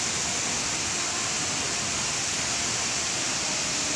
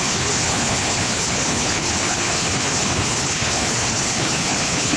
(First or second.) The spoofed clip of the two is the second